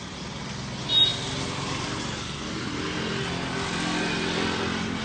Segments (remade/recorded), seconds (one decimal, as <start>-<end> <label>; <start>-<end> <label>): 0.0-5.0 recorded

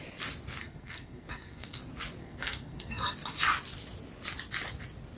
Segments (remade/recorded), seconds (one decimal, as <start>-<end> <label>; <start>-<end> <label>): 0.0-0.6 recorded; 0.6-1.8 remade; 1.8-2.2 recorded; 2.2-3.1 remade; 3.1-5.2 recorded

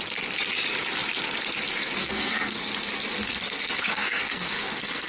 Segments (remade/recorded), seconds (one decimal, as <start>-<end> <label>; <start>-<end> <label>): 0.0-2.0 recorded; 2.0-2.7 remade; 2.7-3.3 recorded; 3.3-5.1 remade

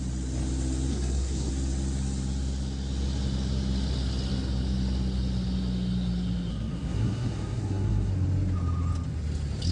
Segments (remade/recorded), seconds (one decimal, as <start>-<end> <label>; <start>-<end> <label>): 0.0-0.9 recorded; 0.9-1.5 remade; 1.5-6.5 recorded; 6.5-8.1 remade; 8.1-9.7 recorded

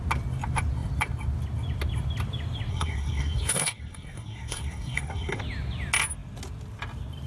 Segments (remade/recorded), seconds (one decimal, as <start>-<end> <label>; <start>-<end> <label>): 0.0-2.7 recorded; 2.7-5.4 remade; 5.4-7.3 recorded

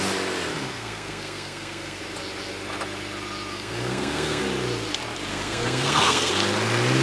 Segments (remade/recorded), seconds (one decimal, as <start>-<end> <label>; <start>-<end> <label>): 0.0-0.5 recorded; 0.5-2.0 remade; 2.0-3.5 recorded; 3.5-4.4 remade; 4.4-5.3 recorded; 5.3-6.3 remade; 6.3-7.0 recorded

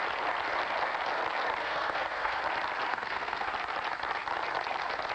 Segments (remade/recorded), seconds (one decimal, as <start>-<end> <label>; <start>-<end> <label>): 0.0-1.6 recorded; 1.6-2.4 remade; 2.4-2.9 recorded; 2.9-3.5 remade; 3.5-5.1 recorded

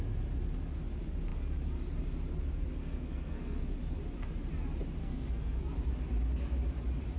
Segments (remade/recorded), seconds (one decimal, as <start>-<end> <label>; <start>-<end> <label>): 0.0-2.8 recorded; 2.8-3.6 remade; 3.6-5.0 recorded; 5.0-5.7 remade; 5.7-7.2 recorded